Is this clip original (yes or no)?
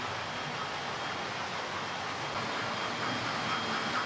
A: yes